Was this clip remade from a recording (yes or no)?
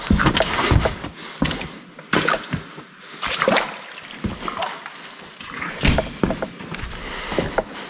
no